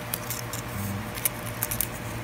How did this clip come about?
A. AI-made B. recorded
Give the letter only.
B